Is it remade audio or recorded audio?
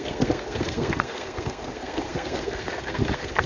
remade